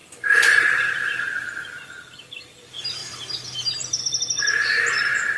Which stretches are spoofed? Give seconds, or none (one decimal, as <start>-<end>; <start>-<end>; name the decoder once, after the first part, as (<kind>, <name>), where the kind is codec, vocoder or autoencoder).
0.0-3.0 (vocoder, BigVGAN v2); 4.0-5.4